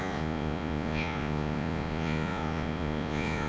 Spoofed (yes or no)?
yes